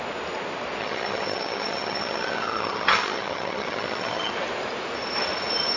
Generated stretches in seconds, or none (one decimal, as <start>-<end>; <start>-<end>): 0.8-4.3